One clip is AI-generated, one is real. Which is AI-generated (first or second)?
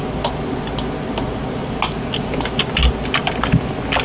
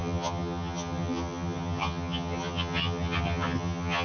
second